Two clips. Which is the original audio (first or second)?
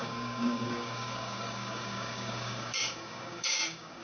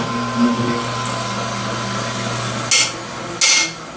second